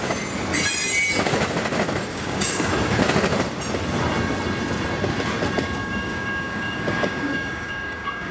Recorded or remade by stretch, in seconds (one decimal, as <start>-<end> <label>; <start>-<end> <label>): 0.0-2.1 recorded; 2.1-2.7 remade; 2.7-5.8 recorded; 5.8-8.3 remade